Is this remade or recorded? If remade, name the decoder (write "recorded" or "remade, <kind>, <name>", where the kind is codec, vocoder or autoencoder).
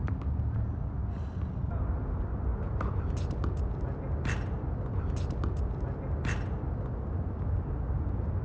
recorded